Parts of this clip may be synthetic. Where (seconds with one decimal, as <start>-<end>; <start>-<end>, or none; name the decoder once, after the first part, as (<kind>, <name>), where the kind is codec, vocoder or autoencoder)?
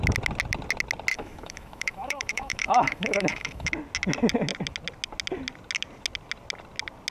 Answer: 1.1-3.7 (autoencoder, DAC-VAE)